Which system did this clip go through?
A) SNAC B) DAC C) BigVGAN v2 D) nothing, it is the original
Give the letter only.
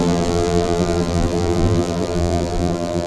C